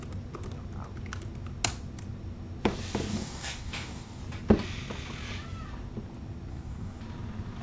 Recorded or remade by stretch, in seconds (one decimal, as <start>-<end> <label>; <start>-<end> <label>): 0.0-3.1 recorded; 3.1-4.2 remade; 4.2-6.5 recorded; 6.5-7.0 remade; 7.0-7.6 recorded